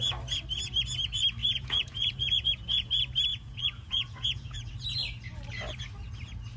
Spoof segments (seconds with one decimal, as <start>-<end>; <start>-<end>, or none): 1.4-2.9; 3.3-4.7

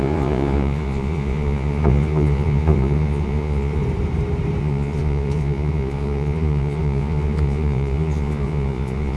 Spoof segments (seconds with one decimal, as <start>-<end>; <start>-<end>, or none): 0.0-3.8; 4.6-9.2

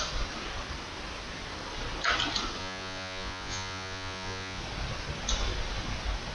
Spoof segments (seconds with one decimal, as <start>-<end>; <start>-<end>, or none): 2.6-4.6

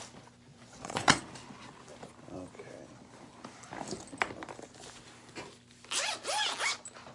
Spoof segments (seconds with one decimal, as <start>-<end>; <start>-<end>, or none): 0.5-1.2

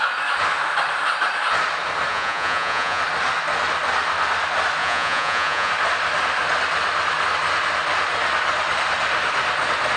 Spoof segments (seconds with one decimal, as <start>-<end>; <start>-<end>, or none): 2.1-3.0; 4.8-5.7

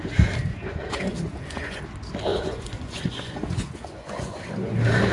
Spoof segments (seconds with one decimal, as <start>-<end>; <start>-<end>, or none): 0.5-1.8; 2.3-4.4

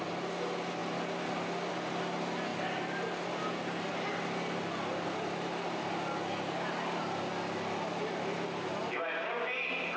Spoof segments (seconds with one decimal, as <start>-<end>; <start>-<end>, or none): none